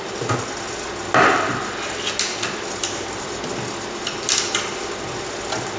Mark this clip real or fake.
real